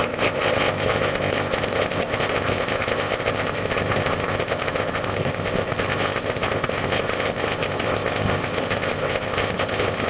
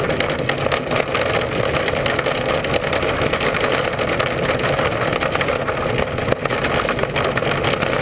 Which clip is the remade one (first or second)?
first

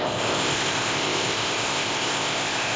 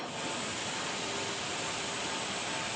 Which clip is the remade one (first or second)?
first